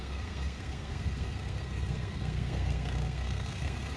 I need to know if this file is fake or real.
fake